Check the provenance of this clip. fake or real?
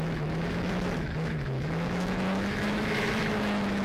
fake